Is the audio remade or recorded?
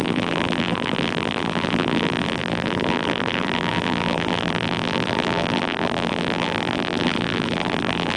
remade